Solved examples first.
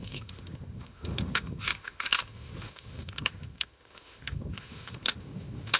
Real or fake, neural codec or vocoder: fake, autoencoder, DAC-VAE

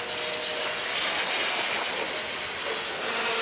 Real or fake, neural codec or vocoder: real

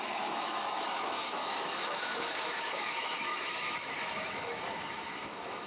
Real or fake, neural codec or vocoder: fake, autoencoder, DAC-VAE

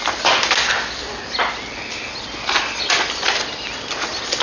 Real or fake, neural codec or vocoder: real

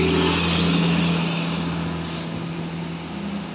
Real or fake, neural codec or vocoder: real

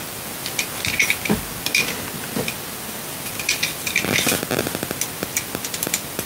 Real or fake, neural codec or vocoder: real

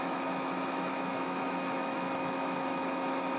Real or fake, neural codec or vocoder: fake, autoencoder, DAC-VAE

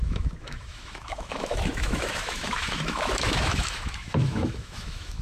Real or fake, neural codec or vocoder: fake, autoencoder, DAC-VAE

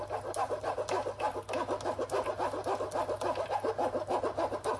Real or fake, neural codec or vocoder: real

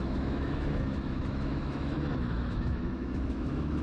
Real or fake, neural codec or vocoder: fake, autoencoder, DAC-VAE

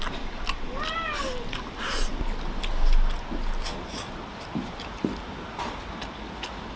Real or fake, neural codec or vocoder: real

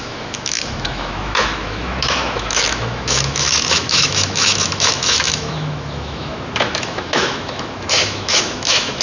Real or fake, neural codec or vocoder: fake, autoencoder, DAC-VAE